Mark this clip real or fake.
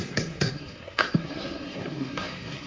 fake